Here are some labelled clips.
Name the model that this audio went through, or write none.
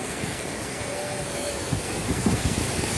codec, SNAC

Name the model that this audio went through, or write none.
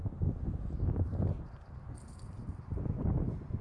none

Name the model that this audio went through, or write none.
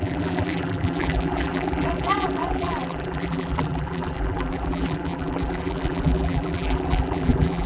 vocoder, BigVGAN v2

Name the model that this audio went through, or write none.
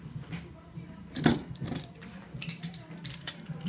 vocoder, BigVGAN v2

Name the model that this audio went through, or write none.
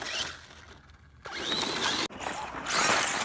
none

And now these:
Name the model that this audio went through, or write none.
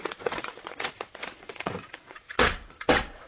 vocoder, WaveNeXt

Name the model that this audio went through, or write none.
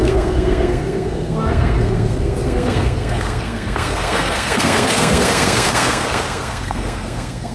codec, SNAC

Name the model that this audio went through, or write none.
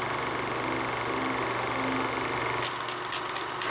none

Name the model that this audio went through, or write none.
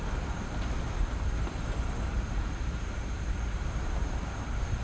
vocoder, BigVGAN v2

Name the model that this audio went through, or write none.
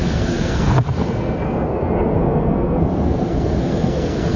codec, SNAC